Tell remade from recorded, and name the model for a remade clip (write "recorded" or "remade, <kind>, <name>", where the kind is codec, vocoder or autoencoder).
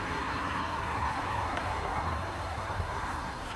remade, codec, SNAC